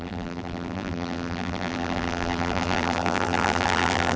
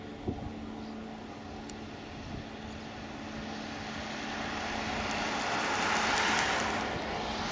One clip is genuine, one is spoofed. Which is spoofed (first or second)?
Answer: first